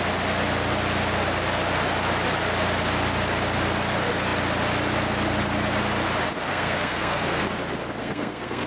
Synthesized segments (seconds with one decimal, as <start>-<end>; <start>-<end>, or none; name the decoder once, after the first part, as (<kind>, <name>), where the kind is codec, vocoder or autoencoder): 6.5-7.4 (codec, SNAC); 8.0-8.7